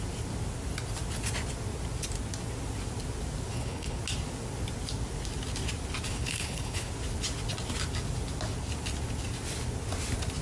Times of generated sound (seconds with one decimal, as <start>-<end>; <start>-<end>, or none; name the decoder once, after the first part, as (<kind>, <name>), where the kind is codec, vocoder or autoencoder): 3.5-4.0 (codec, HILCodec); 6.1-6.9